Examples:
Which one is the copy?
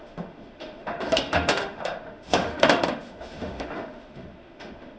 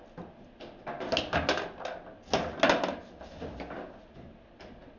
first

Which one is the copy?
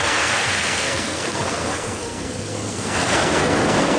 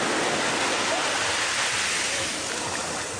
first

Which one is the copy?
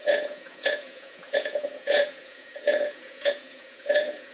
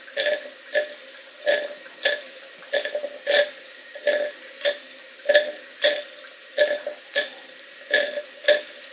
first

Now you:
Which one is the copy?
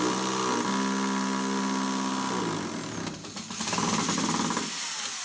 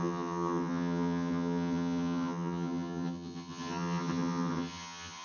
second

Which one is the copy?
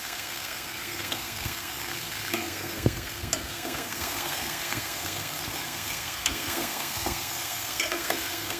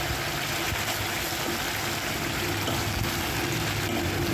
first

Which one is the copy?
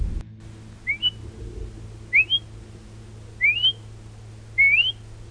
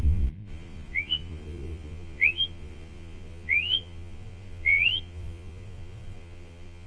second